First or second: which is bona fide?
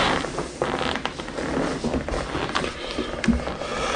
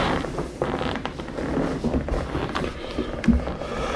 first